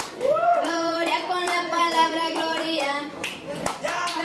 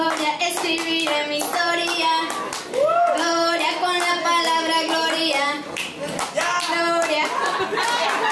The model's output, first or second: first